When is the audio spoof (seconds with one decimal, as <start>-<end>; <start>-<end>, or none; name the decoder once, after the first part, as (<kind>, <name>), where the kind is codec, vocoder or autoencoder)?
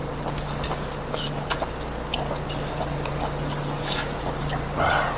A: none